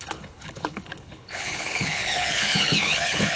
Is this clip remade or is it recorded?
remade